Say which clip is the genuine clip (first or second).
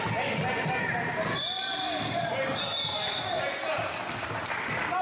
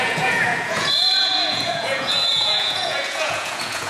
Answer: first